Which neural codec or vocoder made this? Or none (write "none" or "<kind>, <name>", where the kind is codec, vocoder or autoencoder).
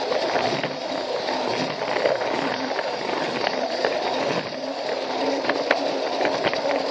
none